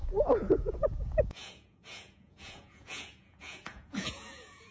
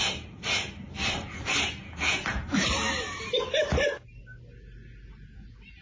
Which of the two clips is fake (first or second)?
first